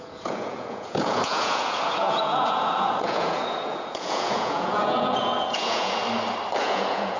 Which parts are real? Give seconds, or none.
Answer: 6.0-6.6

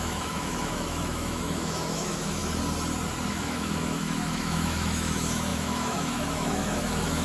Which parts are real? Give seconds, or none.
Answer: 2.4-3.3

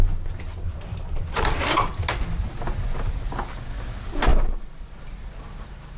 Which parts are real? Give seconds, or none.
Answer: 0.0-0.7; 1.6-4.3; 5.0-6.0